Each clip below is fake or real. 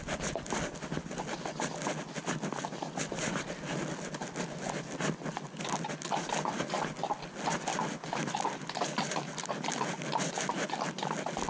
real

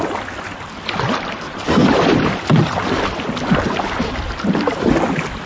real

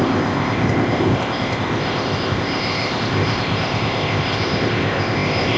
fake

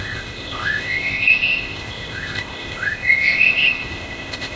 fake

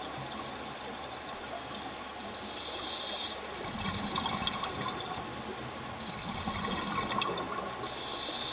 real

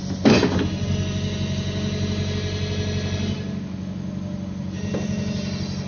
real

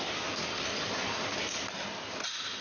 real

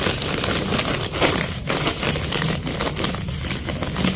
real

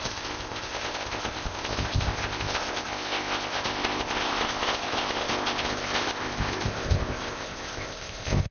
fake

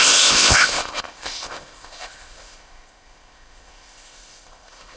fake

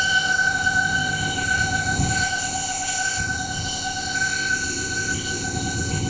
fake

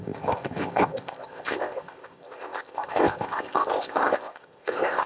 fake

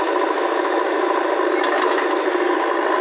real